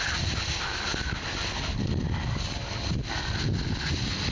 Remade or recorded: recorded